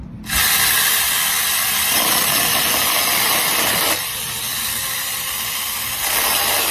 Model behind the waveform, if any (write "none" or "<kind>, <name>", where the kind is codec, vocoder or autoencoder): none